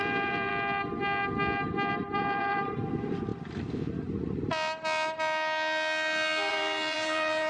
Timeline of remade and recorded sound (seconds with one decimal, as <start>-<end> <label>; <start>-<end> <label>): 0.0-0.5 remade; 0.5-1.9 recorded; 1.9-3.3 remade; 3.3-6.5 recorded; 6.5-7.5 remade